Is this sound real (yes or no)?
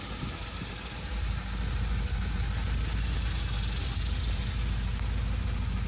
yes